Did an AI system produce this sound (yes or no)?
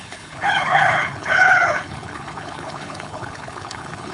yes